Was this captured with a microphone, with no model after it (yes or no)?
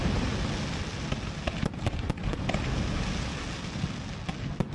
yes